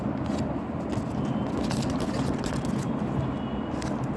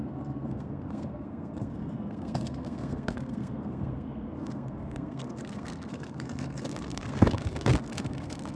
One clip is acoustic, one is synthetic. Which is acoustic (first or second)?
first